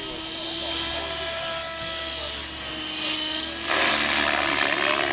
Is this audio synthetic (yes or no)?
no